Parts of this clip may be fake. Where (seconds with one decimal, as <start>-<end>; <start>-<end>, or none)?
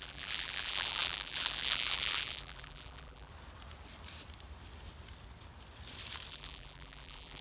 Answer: 0.0-3.3; 6.3-7.4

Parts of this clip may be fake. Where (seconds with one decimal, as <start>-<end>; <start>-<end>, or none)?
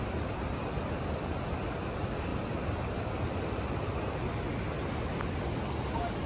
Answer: none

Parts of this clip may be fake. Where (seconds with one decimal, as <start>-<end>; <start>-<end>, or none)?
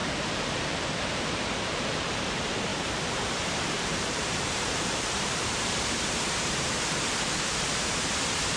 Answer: 0.0-8.6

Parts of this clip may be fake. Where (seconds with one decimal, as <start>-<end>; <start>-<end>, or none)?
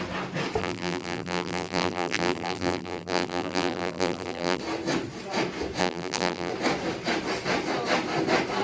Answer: 0.6-4.6; 5.8-6.5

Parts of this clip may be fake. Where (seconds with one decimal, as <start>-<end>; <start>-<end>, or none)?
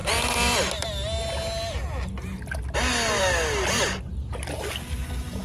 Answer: none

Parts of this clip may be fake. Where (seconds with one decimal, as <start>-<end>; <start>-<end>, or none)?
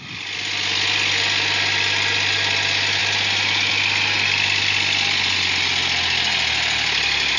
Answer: none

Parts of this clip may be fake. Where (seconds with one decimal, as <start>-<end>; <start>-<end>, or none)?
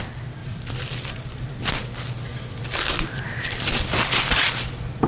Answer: 0.4-1.6; 2.3-5.1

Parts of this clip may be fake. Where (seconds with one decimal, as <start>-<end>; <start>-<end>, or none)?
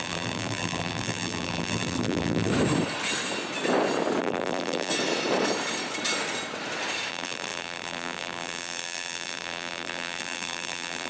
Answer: 0.0-2.5; 4.2-4.9; 7.1-11.1